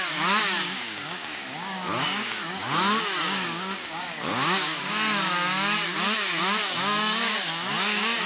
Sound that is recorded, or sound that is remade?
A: remade